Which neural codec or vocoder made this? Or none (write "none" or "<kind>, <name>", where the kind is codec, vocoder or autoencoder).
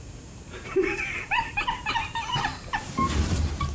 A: vocoder, BigVGAN v2